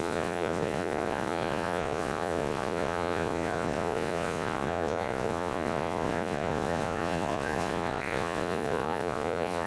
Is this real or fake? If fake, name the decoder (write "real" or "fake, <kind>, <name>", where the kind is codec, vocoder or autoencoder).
fake, vocoder, Vocos